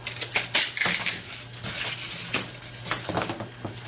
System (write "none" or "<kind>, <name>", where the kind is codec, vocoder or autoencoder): none